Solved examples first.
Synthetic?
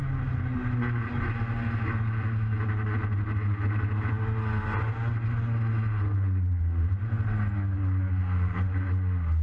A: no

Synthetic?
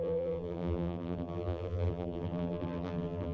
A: yes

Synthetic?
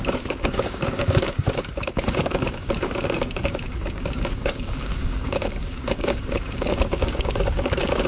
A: yes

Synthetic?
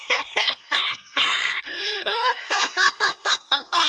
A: yes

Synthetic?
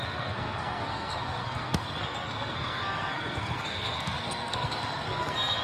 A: yes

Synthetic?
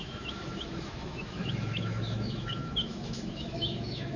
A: yes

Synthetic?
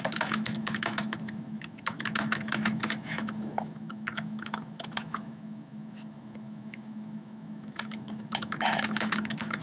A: yes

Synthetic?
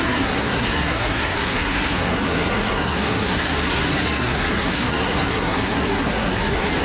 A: yes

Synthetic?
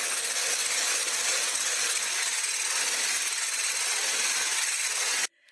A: no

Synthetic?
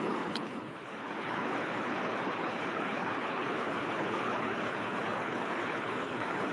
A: yes